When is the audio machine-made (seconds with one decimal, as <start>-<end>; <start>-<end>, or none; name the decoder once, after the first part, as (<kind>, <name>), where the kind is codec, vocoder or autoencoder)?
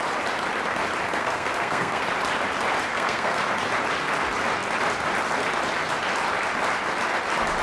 1.2-2.0 (codec, SNAC); 2.9-3.4